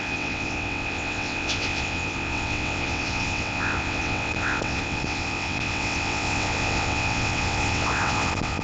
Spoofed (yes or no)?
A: yes